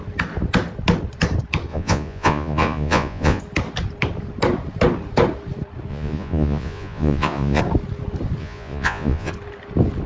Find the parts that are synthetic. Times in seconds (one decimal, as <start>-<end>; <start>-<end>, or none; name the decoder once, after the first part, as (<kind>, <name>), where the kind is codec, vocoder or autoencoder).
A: 1.7-3.4 (vocoder, Vocos); 5.9-7.6; 8.4-9.3

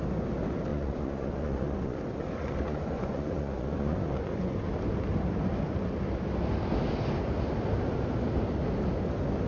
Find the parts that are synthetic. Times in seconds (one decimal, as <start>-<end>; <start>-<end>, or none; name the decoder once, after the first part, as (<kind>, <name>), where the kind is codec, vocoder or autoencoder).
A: 0.7-4.7 (vocoder, Vocos)

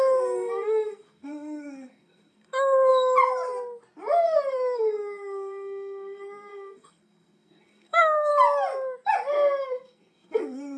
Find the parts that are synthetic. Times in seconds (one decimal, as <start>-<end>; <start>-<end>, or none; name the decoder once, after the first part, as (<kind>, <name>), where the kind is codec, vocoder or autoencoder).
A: 0.0-2.9 (codec, SNAC); 4.5-8.3; 9.6-10.8

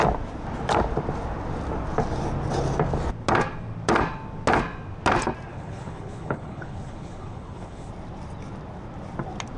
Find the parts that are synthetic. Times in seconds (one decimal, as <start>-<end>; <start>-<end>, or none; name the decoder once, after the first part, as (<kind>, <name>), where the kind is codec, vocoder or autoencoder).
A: 5.5-7.9 (codec, HILCodec)

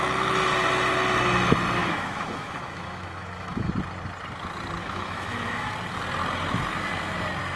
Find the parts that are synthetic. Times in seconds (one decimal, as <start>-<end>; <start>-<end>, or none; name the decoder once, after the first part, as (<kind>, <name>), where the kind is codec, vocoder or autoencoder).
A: 1.8-3.7 (autoencoder, DAC-VAE); 4.8-5.7